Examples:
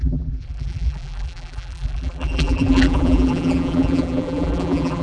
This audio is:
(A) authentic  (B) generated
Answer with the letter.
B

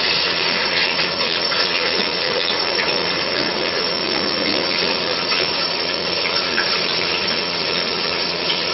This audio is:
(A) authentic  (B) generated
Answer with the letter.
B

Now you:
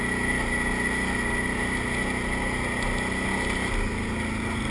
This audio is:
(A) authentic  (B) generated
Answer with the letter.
A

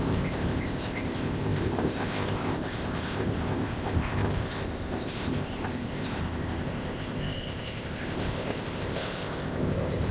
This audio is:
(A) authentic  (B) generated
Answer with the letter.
B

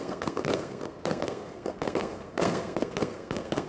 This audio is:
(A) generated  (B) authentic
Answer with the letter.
A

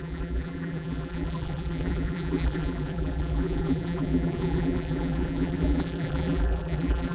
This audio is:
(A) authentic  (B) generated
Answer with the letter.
B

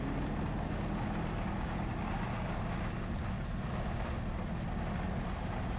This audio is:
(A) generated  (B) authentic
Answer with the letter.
B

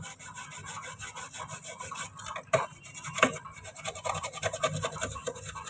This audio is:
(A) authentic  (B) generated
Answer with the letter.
A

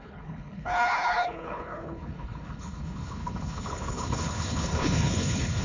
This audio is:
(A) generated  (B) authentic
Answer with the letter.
A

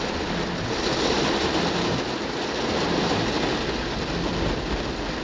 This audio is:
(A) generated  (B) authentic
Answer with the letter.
B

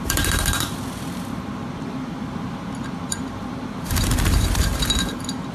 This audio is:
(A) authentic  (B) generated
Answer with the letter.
B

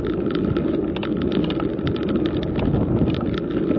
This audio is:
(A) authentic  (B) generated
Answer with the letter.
A